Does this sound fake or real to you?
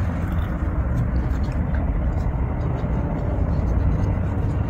fake